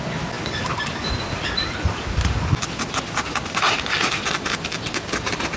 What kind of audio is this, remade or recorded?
recorded